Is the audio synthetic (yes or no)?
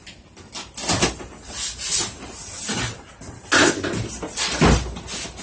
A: no